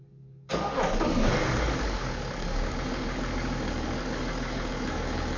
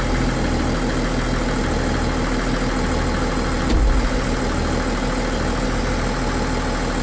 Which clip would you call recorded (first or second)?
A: second